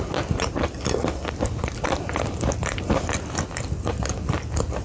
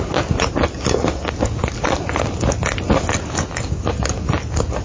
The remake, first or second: first